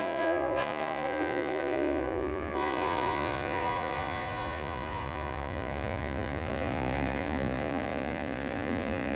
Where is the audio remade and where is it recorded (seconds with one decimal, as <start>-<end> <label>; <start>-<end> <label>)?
0.0-9.2 remade